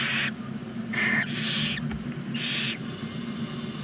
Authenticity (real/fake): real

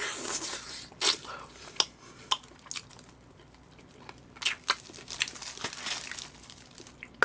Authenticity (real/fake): real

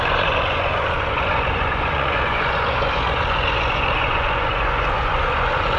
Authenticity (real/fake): fake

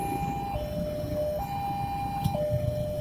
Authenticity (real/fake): real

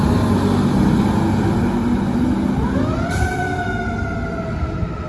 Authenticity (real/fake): real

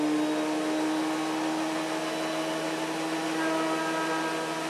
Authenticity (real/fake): real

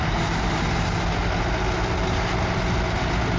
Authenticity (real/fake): real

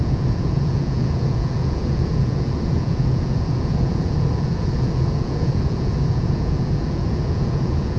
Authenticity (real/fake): fake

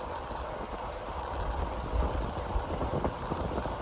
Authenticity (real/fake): real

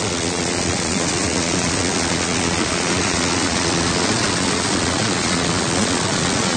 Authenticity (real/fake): fake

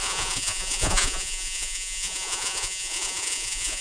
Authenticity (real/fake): fake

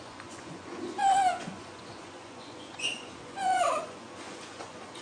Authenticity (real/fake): fake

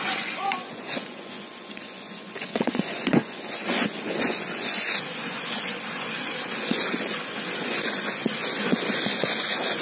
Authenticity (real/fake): fake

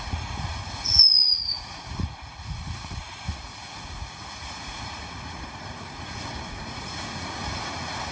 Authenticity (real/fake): fake